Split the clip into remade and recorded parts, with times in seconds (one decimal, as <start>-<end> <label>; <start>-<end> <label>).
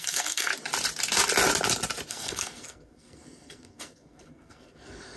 0.0-0.5 remade; 0.5-2.1 recorded; 2.1-5.2 remade